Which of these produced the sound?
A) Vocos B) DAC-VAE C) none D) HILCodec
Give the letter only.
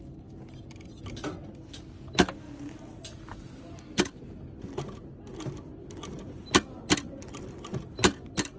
C